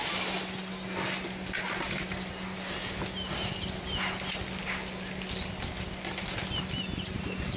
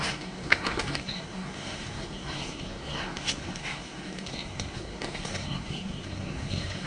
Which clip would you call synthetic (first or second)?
second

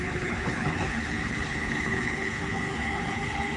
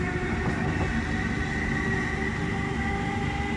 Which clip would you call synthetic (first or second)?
first